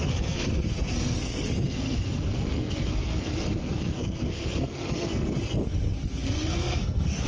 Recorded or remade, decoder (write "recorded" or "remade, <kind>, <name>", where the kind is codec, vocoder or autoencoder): remade, codec, SNAC